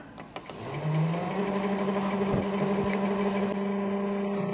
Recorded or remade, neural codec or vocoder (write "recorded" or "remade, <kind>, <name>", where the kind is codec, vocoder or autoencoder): recorded